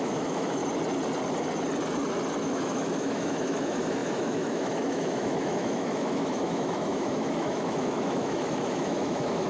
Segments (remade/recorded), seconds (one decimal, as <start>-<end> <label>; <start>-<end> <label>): 0.0-0.6 remade; 0.6-2.4 recorded; 2.4-9.5 remade